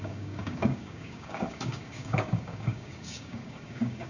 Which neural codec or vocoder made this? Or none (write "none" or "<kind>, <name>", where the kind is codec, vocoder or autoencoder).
codec, DAC